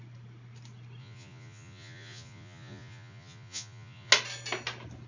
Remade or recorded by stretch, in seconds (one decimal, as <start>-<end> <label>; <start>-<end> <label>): 0.0-1.0 recorded; 1.0-4.1 remade; 4.1-5.1 recorded